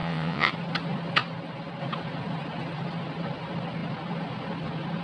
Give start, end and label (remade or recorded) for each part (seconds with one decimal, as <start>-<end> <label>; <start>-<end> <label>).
0.0-0.5 remade; 0.5-5.0 recorded